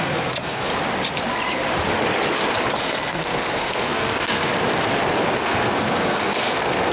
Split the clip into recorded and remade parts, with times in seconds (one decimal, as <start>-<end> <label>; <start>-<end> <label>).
0.0-0.7 remade; 0.7-2.7 recorded; 2.7-4.5 remade; 4.5-5.4 recorded; 5.4-6.9 remade